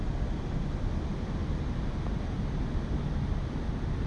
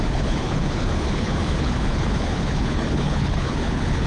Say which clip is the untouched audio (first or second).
first